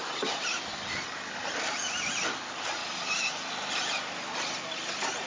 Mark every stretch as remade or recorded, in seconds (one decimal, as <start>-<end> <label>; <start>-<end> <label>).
0.0-1.6 recorded; 1.6-5.3 remade